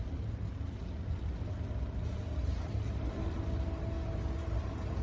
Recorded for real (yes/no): yes